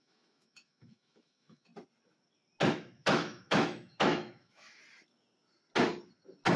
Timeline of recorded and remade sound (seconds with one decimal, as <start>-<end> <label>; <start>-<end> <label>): 0.0-1.7 remade; 1.7-2.7 recorded; 2.7-4.8 remade; 4.8-6.6 recorded